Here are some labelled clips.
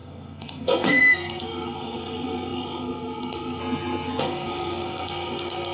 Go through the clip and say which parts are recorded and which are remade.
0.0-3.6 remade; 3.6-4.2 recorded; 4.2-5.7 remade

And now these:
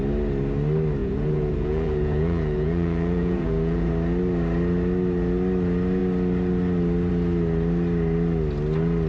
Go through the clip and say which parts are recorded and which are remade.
0.0-1.0 recorded; 1.0-3.9 remade; 3.9-9.1 recorded

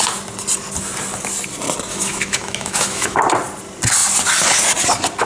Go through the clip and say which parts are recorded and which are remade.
0.0-1.9 recorded; 1.9-3.2 remade; 3.2-5.2 recorded

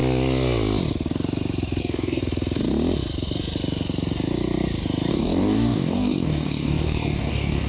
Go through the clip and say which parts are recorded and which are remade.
0.0-1.8 recorded; 1.8-2.2 remade; 2.2-5.1 recorded; 5.1-7.7 remade

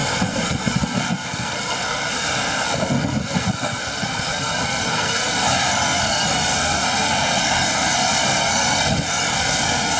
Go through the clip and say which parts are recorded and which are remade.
0.0-10.0 remade